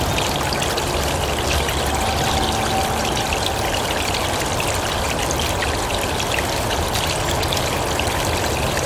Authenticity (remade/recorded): recorded